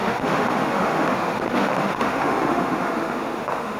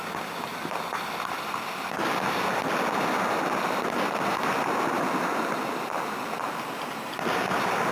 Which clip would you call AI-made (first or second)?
first